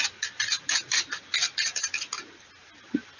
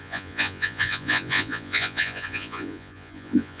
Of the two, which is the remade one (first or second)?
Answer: second